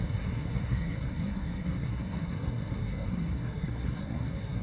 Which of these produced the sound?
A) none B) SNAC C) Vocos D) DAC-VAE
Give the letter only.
B